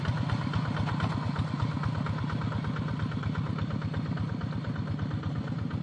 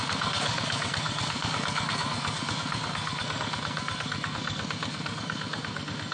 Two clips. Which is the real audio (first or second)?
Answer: first